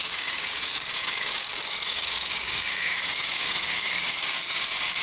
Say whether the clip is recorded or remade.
remade